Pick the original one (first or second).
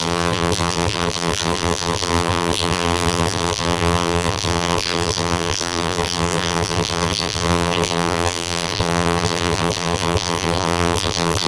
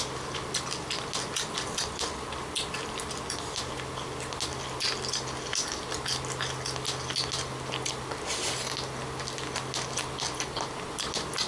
second